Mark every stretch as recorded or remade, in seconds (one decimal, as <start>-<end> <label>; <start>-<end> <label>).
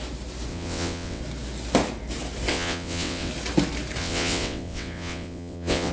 0.0-0.5 recorded; 0.5-1.2 remade; 1.2-2.5 recorded; 2.5-3.3 remade; 3.3-4.0 recorded; 4.0-5.9 remade